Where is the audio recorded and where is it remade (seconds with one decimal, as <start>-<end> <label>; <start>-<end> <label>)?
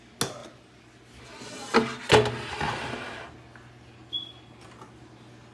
0.0-5.5 recorded